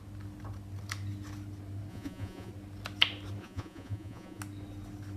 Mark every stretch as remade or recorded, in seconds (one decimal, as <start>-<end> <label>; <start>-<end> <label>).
0.0-1.9 recorded; 1.9-2.5 remade; 2.5-3.4 recorded; 3.4-4.4 remade; 4.4-5.2 recorded